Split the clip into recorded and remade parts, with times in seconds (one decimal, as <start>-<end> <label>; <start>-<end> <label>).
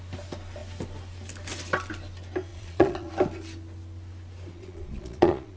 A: 0.0-2.5 recorded; 2.5-3.1 remade; 3.1-4.5 recorded; 4.5-5.6 remade